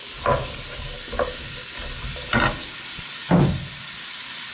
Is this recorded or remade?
recorded